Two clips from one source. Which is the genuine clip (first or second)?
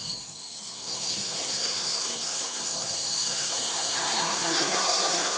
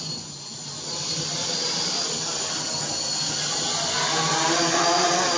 second